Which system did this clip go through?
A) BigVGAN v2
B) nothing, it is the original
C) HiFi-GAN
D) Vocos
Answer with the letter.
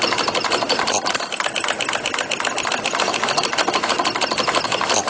B